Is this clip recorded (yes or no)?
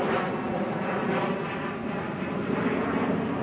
yes